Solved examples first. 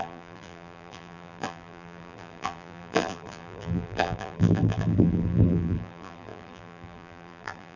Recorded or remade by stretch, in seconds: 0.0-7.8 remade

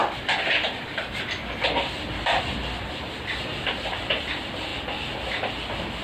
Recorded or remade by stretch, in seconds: 0.0-2.8 recorded; 2.8-6.0 remade

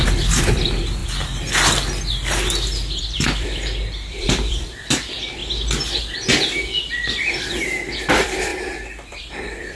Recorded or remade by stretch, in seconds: 0.0-1.0 remade; 1.0-3.0 recorded; 3.0-5.4 remade; 5.4-8.1 recorded; 8.1-9.7 remade

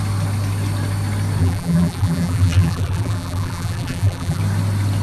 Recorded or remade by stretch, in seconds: 0.0-1.4 recorded; 1.4-4.4 remade; 4.4-5.0 recorded

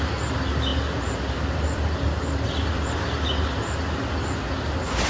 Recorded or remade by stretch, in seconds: 0.0-0.7 recorded; 0.7-2.9 remade; 2.9-5.1 recorded

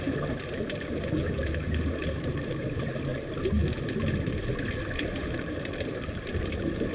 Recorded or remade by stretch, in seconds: 0.0-3.1 remade; 3.1-5.0 recorded; 5.0-6.9 remade